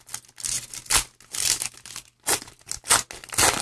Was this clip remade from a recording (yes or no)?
no